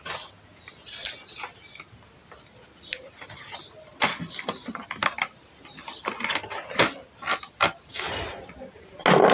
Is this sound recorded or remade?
recorded